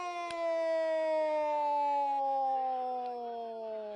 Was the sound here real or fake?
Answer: real